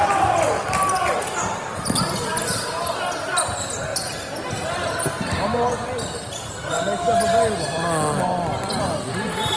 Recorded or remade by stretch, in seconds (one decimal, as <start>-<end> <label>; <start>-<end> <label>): 0.0-9.6 recorded